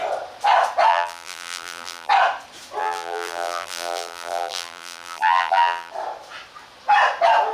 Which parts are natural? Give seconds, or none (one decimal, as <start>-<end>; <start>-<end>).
0.0-0.9; 2.1-2.8; 5.9-7.5